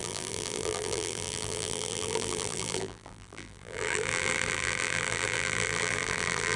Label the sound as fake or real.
fake